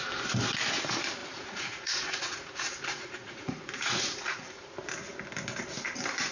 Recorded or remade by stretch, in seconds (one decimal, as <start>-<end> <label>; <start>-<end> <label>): 0.0-1.2 recorded; 1.2-4.7 remade; 4.7-6.3 recorded